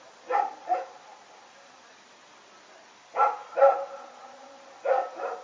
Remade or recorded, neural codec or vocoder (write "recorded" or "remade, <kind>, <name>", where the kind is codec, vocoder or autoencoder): recorded